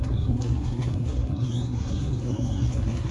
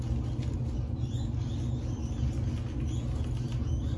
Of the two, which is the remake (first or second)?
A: first